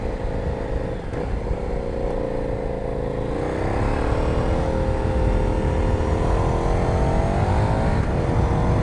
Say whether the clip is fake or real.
real